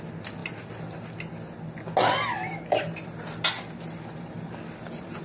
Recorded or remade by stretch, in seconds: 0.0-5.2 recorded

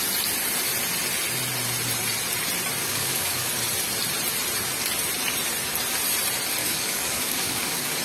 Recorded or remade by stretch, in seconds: 0.0-2.8 recorded; 2.8-3.5 remade; 3.5-6.6 recorded; 6.6-8.0 remade

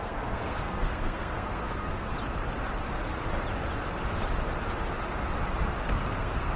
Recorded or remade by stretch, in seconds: 0.0-2.1 remade; 2.1-6.1 recorded; 6.1-6.6 remade